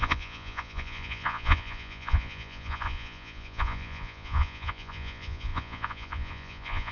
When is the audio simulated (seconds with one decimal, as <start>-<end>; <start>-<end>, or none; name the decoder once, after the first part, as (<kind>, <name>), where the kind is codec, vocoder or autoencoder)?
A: 0.0-6.9 (vocoder, Vocos)